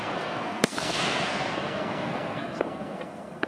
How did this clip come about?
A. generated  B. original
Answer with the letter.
A